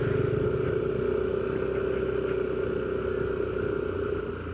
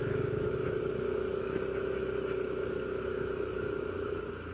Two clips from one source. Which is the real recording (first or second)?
first